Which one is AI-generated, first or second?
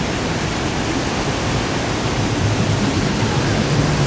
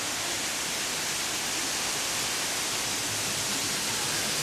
first